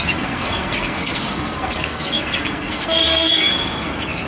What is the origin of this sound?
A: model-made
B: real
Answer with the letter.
A